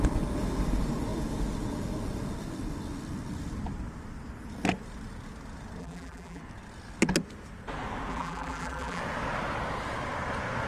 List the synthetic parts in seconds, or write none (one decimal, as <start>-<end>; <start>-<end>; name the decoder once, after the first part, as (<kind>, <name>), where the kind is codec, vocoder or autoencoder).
5.8-6.4 (vocoder, BigVGAN v2); 8.1-9.0